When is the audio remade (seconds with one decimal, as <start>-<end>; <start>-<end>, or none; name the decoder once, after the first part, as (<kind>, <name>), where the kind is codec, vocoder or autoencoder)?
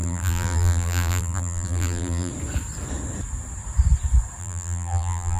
0.0-2.3 (vocoder, BigVGAN v2); 4.4-5.4